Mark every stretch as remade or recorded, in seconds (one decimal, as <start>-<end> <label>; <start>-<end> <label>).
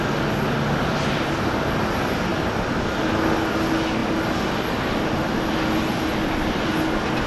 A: 0.0-2.3 recorded; 2.3-3.0 remade; 3.0-6.1 recorded; 6.1-6.7 remade; 6.7-7.3 recorded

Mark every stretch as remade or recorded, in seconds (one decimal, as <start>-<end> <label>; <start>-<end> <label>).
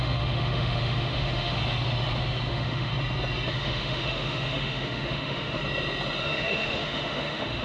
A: 0.0-1.6 remade; 1.6-2.5 recorded; 2.5-2.9 remade; 2.9-3.5 recorded; 3.5-5.6 remade; 5.6-6.2 recorded; 6.2-7.6 remade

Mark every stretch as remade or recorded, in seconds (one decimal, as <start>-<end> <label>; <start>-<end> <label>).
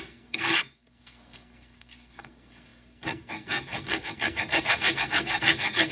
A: 0.0-5.9 remade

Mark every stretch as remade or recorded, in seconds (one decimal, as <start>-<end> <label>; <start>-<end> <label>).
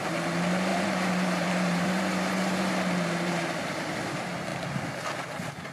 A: 0.0-0.7 recorded; 0.7-3.9 remade; 3.9-5.7 recorded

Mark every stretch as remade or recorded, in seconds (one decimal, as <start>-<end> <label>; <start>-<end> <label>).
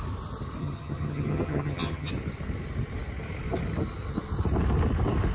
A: 0.0-0.6 recorded; 0.6-2.1 remade; 2.1-5.3 recorded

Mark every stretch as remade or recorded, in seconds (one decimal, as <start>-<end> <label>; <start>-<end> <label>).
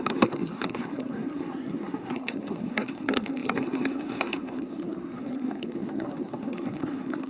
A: 0.0-7.3 remade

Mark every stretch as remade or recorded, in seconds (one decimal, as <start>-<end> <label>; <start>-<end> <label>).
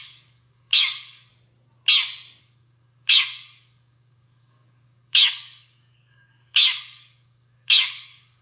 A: 0.0-1.3 remade; 1.3-2.4 recorded; 2.4-8.4 remade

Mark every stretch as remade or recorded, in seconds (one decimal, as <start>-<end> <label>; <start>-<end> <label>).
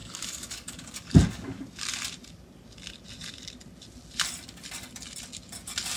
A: 0.0-1.8 remade; 1.8-6.0 recorded